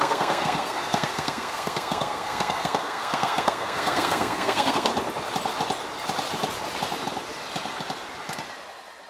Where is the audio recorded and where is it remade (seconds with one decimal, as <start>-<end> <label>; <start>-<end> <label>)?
0.0-4.9 remade; 4.9-9.1 recorded